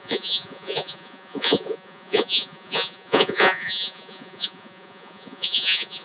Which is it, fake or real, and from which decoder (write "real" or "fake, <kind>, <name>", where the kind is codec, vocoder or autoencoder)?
fake, vocoder, Vocos